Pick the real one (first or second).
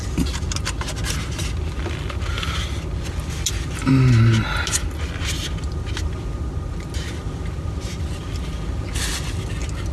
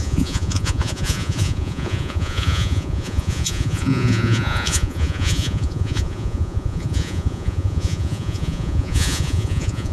first